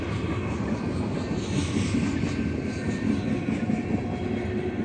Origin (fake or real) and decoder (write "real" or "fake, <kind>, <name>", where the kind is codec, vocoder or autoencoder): real